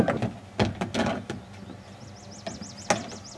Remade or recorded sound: recorded